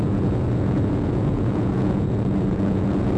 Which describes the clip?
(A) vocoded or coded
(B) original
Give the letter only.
A